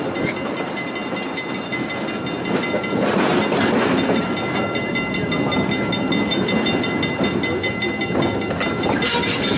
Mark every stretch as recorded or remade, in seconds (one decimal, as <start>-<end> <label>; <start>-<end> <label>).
0.0-9.6 recorded